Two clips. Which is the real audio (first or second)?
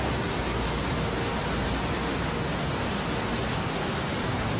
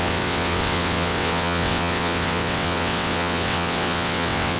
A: first